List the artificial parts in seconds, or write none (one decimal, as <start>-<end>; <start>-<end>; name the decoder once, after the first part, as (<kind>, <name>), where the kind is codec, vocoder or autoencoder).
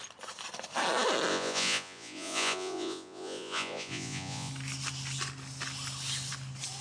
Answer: 1.3-4.5 (vocoder, Vocos)